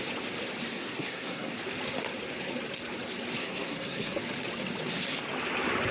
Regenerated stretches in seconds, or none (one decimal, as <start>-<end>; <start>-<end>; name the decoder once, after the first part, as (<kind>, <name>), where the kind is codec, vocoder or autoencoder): 0.7-1.5 (codec, SNAC); 3.4-4.2